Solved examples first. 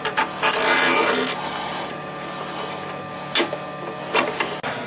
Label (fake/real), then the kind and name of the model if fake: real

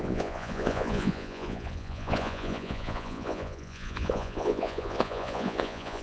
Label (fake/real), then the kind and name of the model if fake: fake, vocoder, Vocos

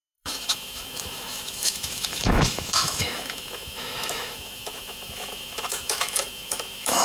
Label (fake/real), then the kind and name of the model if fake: fake, autoencoder, DAC-VAE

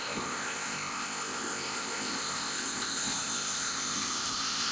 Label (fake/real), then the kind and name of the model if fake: fake, codec, ZipCodec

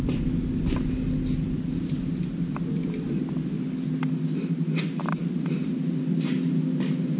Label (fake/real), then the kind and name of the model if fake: real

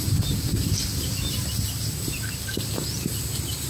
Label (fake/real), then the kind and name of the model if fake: real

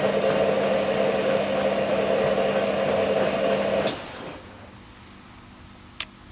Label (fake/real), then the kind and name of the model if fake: real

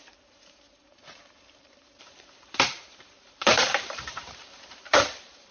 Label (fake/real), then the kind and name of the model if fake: fake, vocoder, BigVGAN v2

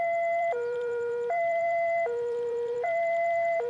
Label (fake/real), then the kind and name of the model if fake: fake, vocoder, BigVGAN v2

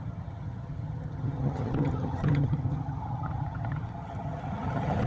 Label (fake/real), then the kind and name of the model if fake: fake, vocoder, HiFi-GAN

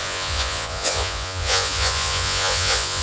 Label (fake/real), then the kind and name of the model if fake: fake, vocoder, Vocos